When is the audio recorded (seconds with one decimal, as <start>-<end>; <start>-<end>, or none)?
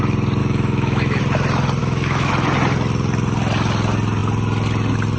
0.0-0.4; 1.2-1.8; 2.3-5.2